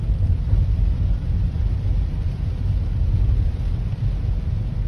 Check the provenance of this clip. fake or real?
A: real